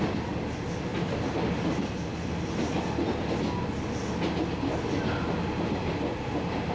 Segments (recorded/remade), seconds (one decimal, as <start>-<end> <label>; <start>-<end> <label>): 0.0-6.7 recorded